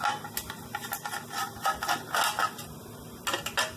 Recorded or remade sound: recorded